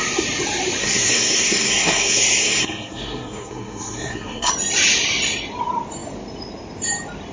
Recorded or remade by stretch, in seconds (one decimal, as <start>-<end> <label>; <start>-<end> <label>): 0.0-0.8 recorded; 0.8-4.5 remade; 4.5-7.3 recorded